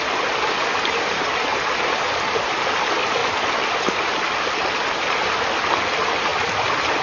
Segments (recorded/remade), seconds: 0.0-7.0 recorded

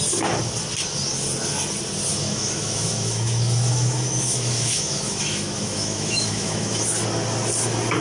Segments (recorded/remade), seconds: 0.0-2.1 recorded; 2.1-6.9 remade; 6.9-8.0 recorded

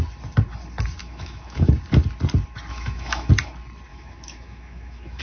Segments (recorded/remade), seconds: 0.0-1.0 recorded; 1.0-1.7 remade; 1.7-2.7 recorded; 2.7-3.3 remade; 3.3-3.9 recorded; 3.9-5.2 remade

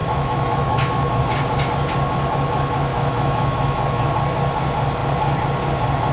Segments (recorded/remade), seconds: 0.0-1.2 remade; 1.2-2.9 recorded; 2.9-4.1 remade; 4.1-6.1 recorded